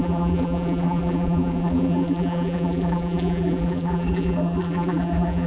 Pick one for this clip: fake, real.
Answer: fake